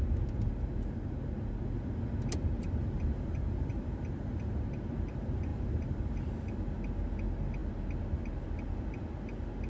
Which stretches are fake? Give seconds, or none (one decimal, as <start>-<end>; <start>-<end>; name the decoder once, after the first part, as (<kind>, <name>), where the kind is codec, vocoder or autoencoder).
2.8-4.6 (vocoder, BigVGAN v2); 5.5-6.3